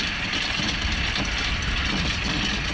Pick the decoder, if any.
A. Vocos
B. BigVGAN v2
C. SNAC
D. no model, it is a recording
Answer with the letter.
D